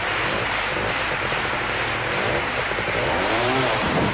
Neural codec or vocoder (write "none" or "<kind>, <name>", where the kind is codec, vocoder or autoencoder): vocoder, BigVGAN v2